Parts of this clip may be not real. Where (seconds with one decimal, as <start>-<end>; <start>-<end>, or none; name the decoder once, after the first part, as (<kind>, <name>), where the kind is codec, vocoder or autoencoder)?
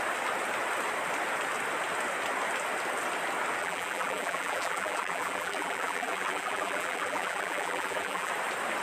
3.6-8.3 (vocoder, BigVGAN v2)